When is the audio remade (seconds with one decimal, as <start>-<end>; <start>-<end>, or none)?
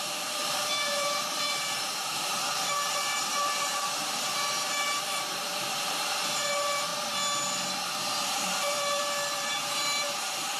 0.0-6.9; 8.0-10.6